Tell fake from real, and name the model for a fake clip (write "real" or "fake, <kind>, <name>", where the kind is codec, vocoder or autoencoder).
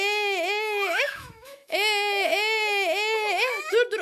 fake, autoencoder, DAC-VAE